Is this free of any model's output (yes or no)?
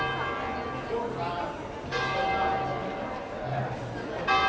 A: yes